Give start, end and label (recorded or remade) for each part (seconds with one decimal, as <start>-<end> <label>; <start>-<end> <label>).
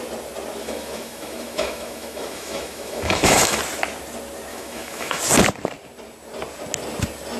0.0-0.6 recorded; 0.6-3.6 remade; 3.6-4.5 recorded; 4.5-5.2 remade; 5.2-7.4 recorded